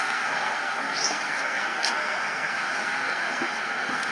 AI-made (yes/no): yes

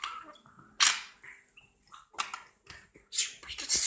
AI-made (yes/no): no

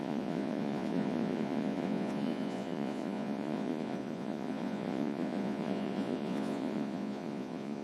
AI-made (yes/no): yes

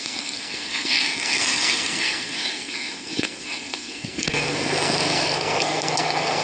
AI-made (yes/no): yes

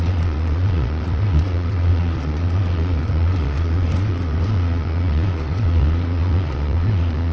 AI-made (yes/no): yes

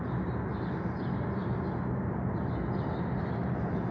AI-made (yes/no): no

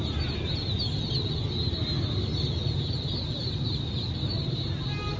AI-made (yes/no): no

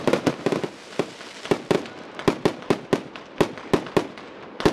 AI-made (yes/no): no